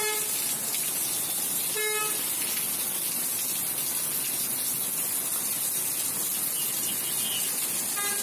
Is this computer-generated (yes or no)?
no